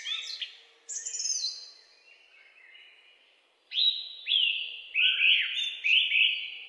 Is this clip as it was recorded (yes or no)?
yes